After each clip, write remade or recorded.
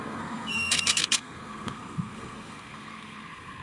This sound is remade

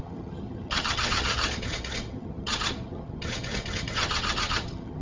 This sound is remade